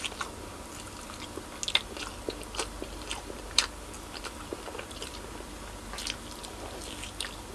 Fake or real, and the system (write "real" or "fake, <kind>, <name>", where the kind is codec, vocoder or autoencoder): real